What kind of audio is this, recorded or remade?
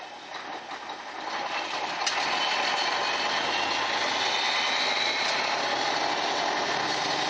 recorded